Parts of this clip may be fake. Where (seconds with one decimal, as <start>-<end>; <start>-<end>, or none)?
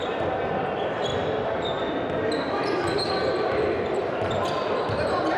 none